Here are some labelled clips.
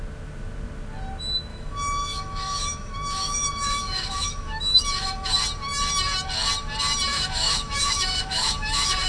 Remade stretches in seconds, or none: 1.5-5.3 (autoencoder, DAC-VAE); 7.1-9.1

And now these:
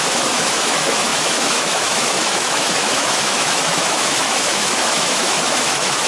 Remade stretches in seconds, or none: 0.0-6.1 (autoencoder, DAC-VAE)

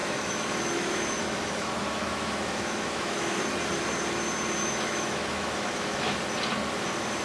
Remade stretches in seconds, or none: 0.0-3.4 (autoencoder, DAC-VAE); 4.6-6.2

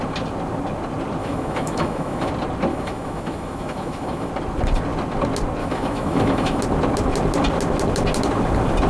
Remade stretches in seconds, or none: 1.2-2.3 (autoencoder, DAC-VAE); 2.7-4.3; 5.6-6.6

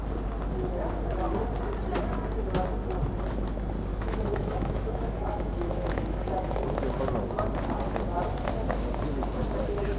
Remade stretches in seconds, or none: 3.9-6.6 (autoencoder, DAC-VAE)

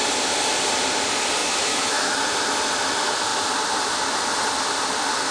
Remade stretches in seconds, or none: 1.4-2.2 (autoencoder, DAC-VAE)

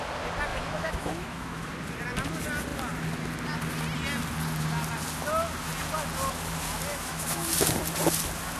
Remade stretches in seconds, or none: 0.5-1.7 (autoencoder, DAC-VAE); 6.9-7.5